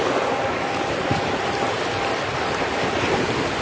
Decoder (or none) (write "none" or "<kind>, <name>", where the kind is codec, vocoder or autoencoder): none